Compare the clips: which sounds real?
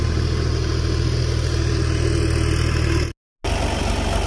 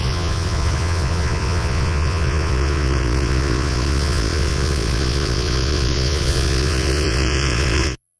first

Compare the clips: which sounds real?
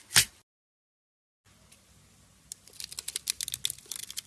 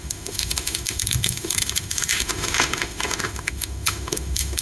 first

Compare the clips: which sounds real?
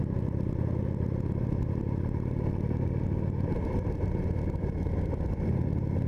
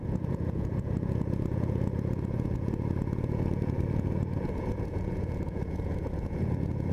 first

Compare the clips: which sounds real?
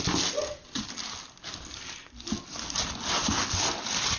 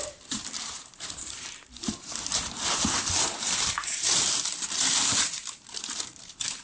first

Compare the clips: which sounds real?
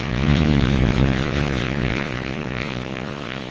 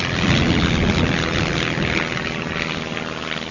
second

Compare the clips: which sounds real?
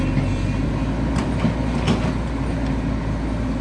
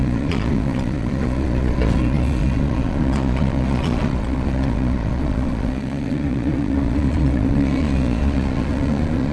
first